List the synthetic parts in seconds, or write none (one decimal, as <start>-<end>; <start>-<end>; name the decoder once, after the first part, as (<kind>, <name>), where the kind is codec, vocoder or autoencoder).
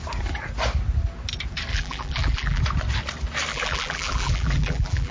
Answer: 1.7-2.6 (vocoder, BigVGAN v2); 3.5-5.1